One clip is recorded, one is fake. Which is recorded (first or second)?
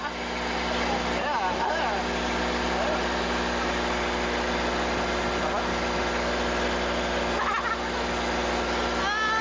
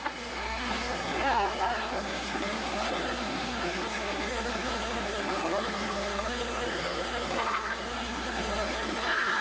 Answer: first